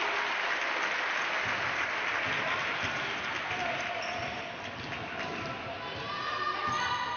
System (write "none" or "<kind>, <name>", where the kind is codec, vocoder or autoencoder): none